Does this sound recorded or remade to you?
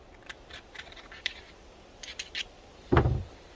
recorded